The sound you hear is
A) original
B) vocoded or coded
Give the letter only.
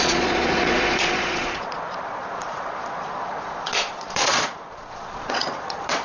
B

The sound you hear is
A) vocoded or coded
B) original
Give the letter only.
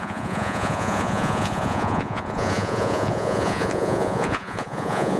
A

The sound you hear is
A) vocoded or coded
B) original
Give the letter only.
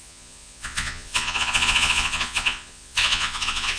A